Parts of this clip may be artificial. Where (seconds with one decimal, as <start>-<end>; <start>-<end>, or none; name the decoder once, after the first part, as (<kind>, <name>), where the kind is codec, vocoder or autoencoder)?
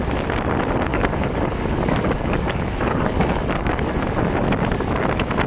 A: 0.9-3.9 (codec, DAC)